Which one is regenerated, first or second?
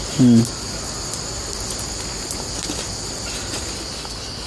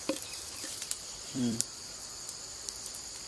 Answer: second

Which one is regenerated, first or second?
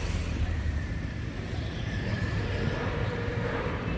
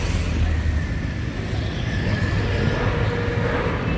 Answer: first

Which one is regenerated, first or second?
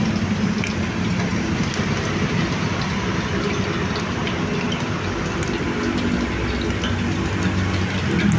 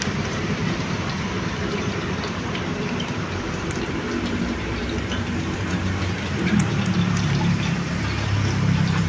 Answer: second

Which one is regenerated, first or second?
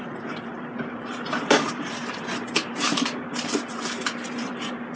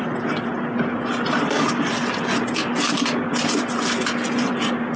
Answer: first